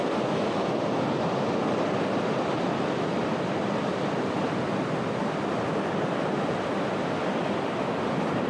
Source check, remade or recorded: recorded